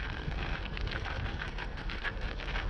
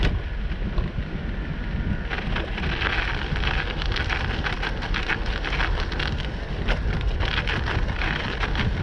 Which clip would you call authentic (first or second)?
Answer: second